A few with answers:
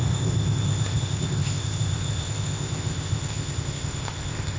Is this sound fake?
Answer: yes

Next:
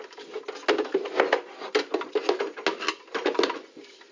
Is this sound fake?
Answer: no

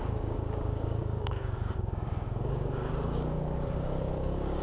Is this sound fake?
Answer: yes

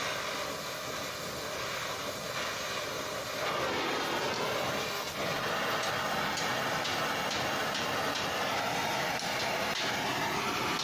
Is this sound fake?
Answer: no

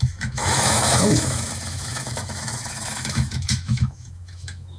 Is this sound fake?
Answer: yes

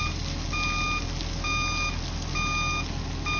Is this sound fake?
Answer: no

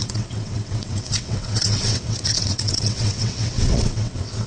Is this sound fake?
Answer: yes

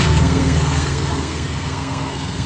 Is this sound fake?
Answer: yes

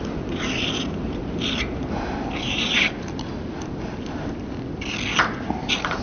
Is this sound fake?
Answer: no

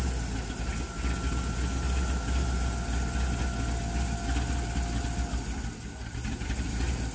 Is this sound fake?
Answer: no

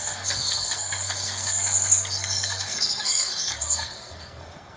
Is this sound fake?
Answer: yes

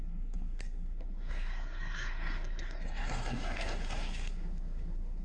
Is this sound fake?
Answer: yes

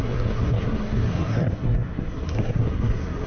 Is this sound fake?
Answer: yes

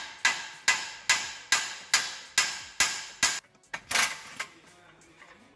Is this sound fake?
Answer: no